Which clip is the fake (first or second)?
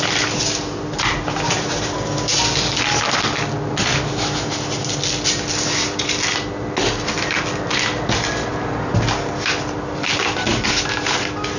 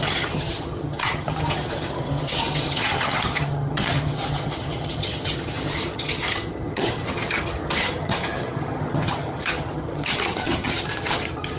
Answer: second